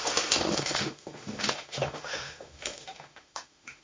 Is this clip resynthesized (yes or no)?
yes